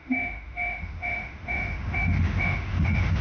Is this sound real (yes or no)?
no